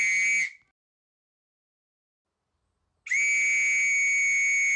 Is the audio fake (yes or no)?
no